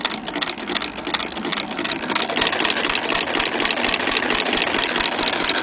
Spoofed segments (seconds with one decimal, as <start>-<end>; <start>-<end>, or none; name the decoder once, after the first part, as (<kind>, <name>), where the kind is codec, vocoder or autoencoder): 1.5-4.9 (vocoder, BigVGAN v2)